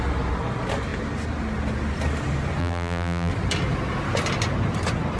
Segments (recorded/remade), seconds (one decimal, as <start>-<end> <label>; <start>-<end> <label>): 0.0-2.6 recorded; 2.6-3.3 remade; 3.3-5.2 recorded